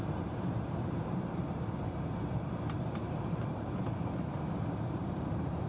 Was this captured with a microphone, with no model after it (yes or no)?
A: no